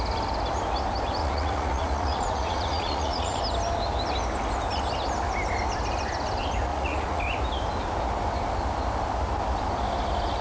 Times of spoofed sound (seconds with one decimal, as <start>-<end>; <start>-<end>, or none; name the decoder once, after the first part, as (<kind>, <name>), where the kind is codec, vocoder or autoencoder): 1.2-3.4 (vocoder, Vocos); 6.7-7.2

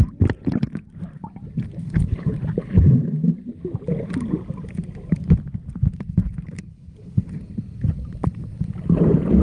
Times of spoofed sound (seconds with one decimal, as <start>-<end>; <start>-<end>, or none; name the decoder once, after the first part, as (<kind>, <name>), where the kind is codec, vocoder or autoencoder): 1.8-2.3 (codec, HILCodec); 6.7-7.3

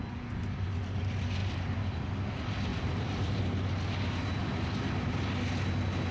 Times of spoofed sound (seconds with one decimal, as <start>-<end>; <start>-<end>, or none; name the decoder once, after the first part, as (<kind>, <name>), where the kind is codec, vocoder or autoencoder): 1.4-2.0 (vocoder, BigVGAN v2); 2.7-3.4

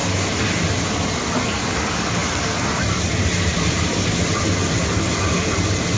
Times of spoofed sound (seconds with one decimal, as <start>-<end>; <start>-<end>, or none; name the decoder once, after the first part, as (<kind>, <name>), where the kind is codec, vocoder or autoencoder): none

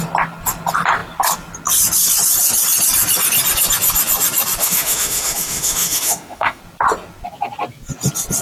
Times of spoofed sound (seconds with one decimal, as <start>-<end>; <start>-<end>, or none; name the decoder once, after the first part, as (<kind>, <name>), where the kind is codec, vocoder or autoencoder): 4.6-6.6 (autoencoder, DAC-VAE)

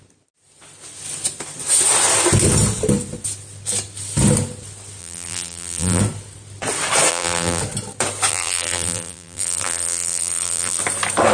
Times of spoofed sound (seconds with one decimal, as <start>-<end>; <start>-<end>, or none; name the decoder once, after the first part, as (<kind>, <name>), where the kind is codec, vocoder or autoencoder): 5.0-6.0 (vocoder, BigVGAN v2); 7.1-7.6; 8.3-10.8

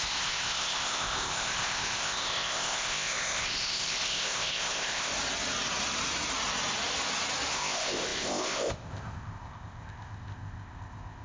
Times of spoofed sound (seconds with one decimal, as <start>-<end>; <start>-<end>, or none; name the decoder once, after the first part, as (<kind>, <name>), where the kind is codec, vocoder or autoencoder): 0.0-5.1 (codec, ZipCodec); 7.5-11.2

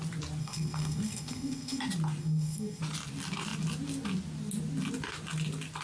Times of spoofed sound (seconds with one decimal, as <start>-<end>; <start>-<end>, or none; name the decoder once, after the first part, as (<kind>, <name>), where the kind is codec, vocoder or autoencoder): 0.4-1.8 (codec, SNAC); 2.2-2.8